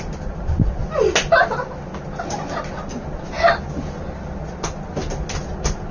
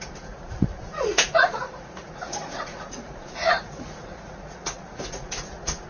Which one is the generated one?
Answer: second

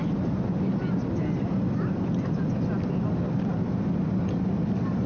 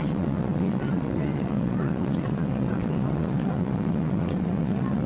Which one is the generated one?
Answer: second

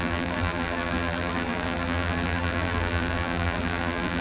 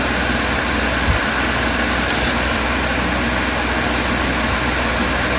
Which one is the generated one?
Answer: first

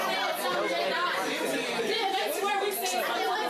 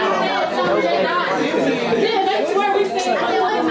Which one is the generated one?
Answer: first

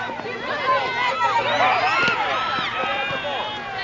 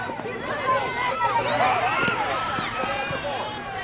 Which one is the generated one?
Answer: second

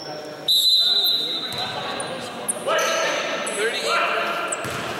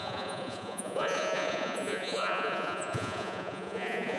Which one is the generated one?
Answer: second